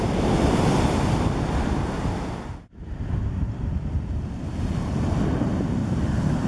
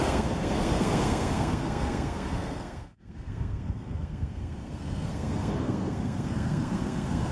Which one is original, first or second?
first